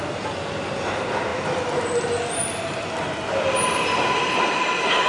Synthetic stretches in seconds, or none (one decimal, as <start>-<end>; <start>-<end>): none